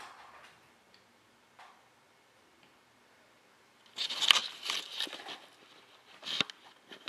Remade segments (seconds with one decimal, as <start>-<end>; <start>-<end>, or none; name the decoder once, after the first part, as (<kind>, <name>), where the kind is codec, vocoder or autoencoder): none